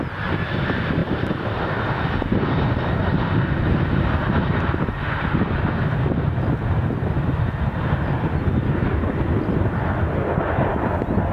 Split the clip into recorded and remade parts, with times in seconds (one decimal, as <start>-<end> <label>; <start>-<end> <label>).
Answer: 0.0-1.0 recorded; 1.0-1.8 remade; 1.8-3.0 recorded; 3.0-6.1 remade; 6.1-11.3 recorded